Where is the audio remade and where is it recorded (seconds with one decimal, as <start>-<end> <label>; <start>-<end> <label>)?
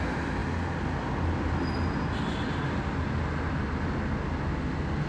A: 0.0-5.1 recorded